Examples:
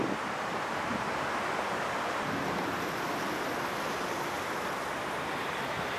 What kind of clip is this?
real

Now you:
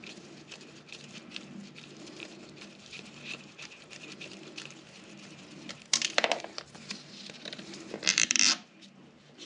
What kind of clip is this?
fake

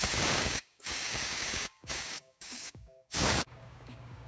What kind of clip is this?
fake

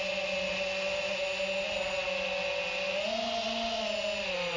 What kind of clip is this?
real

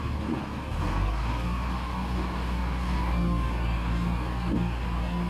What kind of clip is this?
fake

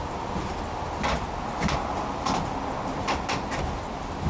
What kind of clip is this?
real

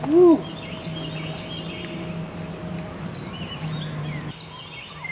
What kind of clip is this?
real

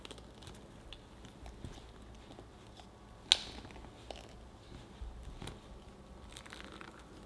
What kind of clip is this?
real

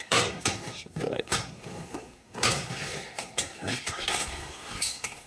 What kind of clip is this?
fake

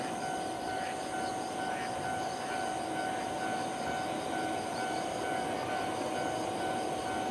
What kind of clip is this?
real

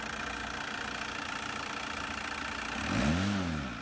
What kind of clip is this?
real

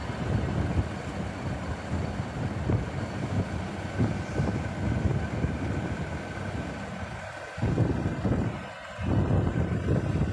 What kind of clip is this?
real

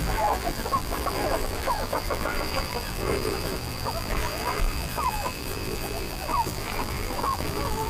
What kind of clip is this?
fake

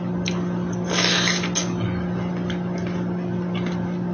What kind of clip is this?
real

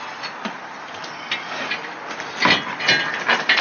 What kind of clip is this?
real